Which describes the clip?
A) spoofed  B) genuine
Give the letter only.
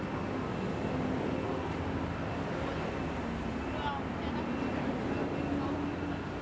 B